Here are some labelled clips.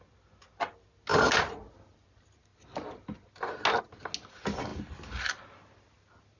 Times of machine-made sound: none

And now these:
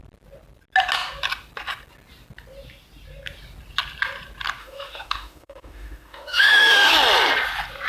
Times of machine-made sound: 4.6-6.9

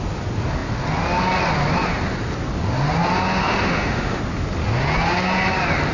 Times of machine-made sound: 3.4-4.2

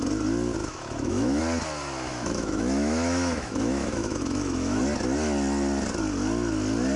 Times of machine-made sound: 0.6-1.4; 2.1-4.8

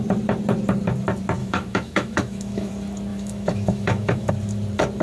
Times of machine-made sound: 1.4-2.7; 3.1-4.3

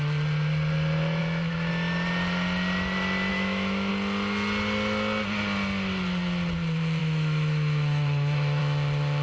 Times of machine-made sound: 1.2-1.7; 3.3-3.9; 7.0-8.6

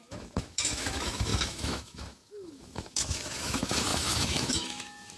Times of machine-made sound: 0.0-5.2

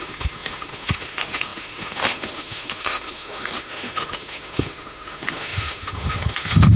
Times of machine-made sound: 0.0-6.8